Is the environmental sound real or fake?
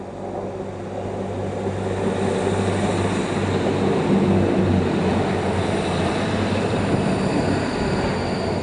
real